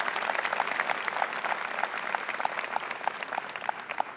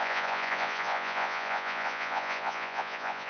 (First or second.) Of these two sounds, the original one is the first